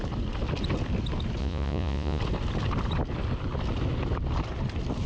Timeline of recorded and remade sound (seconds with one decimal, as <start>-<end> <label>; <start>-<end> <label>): 0.0-1.4 recorded; 1.4-2.2 remade; 2.2-5.1 recorded